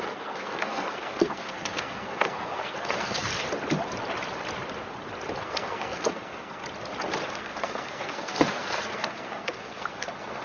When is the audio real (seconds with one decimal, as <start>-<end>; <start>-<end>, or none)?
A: 3.3-5.4; 6.6-7.3